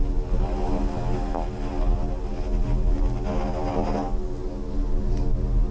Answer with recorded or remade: recorded